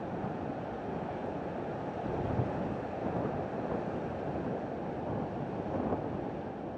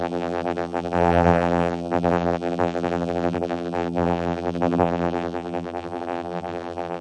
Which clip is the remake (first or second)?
second